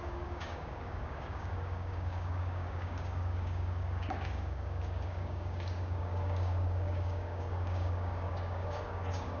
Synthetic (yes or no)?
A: yes